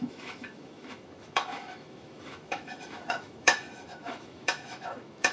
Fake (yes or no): yes